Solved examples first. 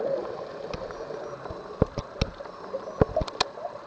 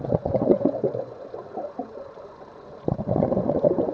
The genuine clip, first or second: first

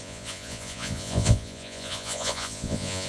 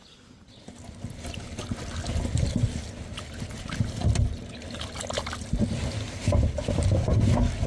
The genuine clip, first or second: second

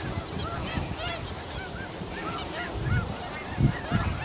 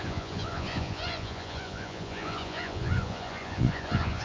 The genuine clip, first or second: first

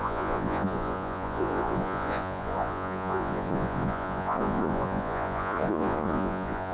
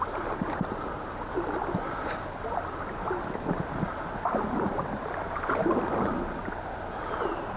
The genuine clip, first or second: second